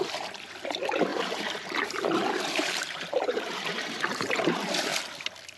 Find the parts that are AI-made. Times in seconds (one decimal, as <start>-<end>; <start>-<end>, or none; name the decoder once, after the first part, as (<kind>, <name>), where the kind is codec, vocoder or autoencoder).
1.1-4.5 (vocoder, BigVGAN v2)